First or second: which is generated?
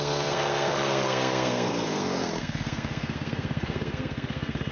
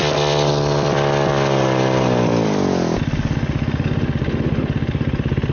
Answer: first